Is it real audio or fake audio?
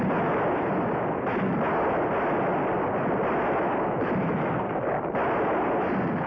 real